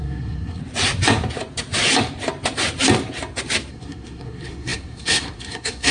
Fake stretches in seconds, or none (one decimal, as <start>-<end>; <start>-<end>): 0.0-0.6; 3.7-5.9